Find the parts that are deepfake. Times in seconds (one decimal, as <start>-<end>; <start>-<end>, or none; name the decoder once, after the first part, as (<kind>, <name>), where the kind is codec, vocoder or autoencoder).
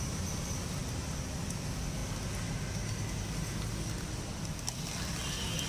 none